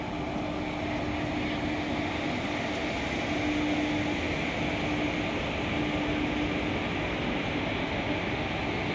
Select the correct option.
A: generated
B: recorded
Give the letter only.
B